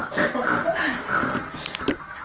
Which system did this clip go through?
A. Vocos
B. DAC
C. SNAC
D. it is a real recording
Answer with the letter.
D